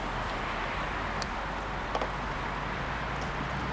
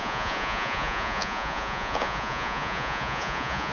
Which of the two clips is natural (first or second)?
first